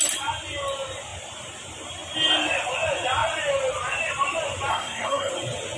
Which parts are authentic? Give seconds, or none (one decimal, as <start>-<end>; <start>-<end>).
0.0-4.7; 5.3-5.8